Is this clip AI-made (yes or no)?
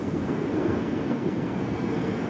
yes